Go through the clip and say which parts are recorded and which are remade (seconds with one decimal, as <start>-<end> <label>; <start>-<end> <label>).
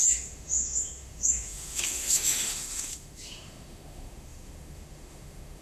0.0-5.6 remade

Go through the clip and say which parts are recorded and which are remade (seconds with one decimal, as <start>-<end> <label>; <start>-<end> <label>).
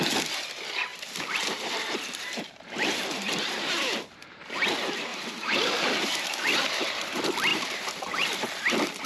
0.0-0.9 recorded; 0.9-3.7 remade; 3.7-5.1 recorded; 5.1-6.2 remade; 6.2-7.5 recorded; 7.5-8.6 remade; 8.6-9.1 recorded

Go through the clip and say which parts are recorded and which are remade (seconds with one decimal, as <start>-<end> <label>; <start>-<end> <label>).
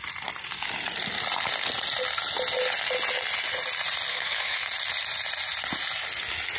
0.0-4.1 recorded; 4.1-4.6 remade; 4.6-6.6 recorded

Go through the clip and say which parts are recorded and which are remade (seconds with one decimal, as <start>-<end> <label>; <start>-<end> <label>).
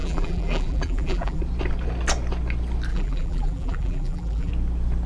0.0-1.4 remade; 1.4-2.9 recorded; 2.9-4.5 remade; 4.5-5.1 recorded